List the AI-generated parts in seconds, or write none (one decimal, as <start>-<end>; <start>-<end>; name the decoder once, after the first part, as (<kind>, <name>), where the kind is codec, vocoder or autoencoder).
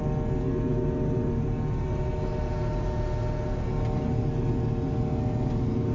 none